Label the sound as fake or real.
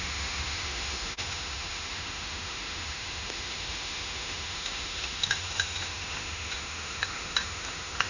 fake